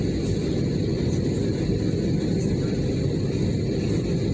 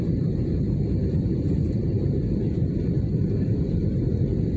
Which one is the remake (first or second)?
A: second